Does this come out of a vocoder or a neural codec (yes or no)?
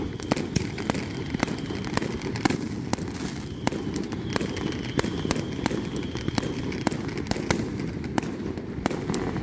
no